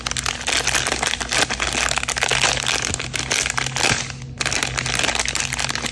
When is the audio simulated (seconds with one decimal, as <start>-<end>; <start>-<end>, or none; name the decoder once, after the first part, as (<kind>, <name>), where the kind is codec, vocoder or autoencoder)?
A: none